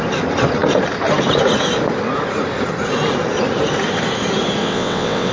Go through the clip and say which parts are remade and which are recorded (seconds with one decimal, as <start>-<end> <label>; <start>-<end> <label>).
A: 0.0-4.6 recorded; 4.6-5.3 remade